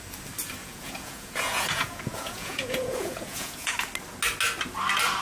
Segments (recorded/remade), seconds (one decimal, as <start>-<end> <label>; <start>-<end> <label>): 0.0-0.6 recorded; 0.6-3.7 remade; 3.7-5.2 recorded